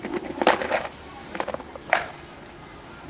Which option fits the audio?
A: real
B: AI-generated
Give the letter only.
A